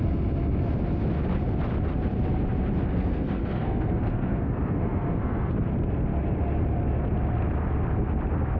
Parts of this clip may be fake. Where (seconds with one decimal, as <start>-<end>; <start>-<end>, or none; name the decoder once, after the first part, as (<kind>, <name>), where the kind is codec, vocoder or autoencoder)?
2.8-5.5 (codec, SNAC)